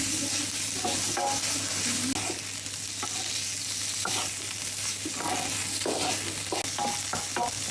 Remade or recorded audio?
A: recorded